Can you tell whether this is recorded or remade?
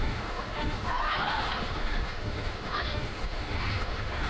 remade